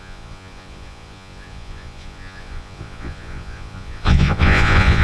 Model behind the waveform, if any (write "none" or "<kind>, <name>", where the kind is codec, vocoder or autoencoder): vocoder, Vocos